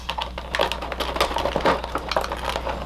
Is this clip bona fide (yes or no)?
yes